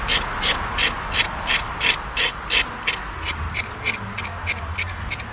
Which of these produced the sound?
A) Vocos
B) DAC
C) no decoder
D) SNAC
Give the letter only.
C